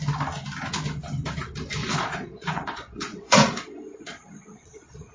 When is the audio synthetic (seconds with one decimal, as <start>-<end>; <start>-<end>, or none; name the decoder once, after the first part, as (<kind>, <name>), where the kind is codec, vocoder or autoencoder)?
1.8-5.1 (vocoder, Vocos)